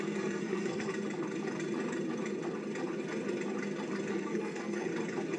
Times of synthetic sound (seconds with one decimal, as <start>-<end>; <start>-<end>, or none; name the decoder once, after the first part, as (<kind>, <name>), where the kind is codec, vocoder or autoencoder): 0.0-0.9 (codec, SNAC); 4.1-4.9